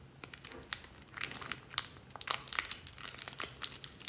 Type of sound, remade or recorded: recorded